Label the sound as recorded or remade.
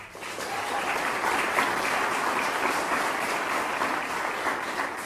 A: recorded